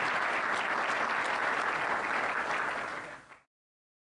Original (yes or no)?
yes